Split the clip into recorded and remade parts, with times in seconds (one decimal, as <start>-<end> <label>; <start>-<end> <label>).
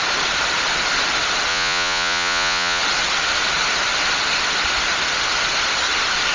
0.0-1.5 recorded; 1.5-2.8 remade; 2.8-6.3 recorded